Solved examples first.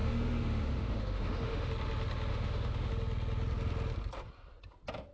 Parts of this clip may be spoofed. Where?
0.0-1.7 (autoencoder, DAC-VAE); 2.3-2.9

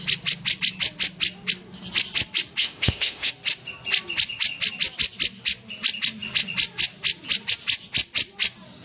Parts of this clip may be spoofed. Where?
2.6-3.3 (autoencoder, DAC-VAE)

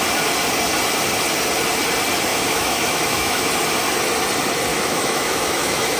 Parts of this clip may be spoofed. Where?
2.3-3.5 (autoencoder, DAC-VAE); 4.7-6.0

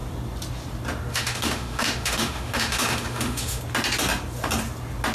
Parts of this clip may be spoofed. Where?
1.1-3.6 (autoencoder, DAC-VAE)

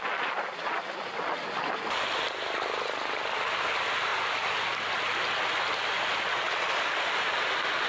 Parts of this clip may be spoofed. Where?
none

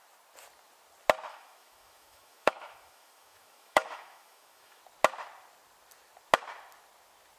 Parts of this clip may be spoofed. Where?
1.3-4.8 (autoencoder, DAC-VAE)

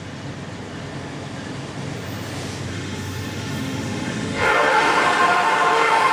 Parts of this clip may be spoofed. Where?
2.7-6.1 (autoencoder, DAC-VAE)

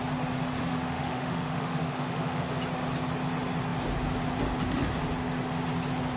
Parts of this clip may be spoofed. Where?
0.7-2.5 (autoencoder, DAC-VAE)